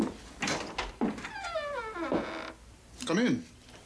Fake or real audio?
real